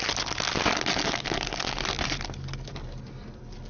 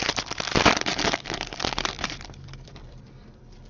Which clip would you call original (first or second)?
first